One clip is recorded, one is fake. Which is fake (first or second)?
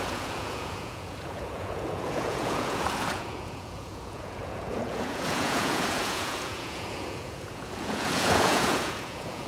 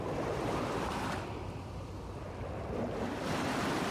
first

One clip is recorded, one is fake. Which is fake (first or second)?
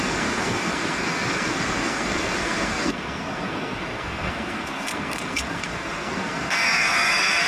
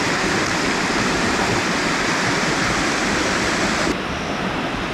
first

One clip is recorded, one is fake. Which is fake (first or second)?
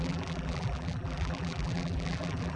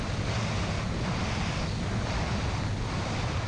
first